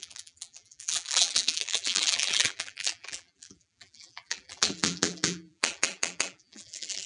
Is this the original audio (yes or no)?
no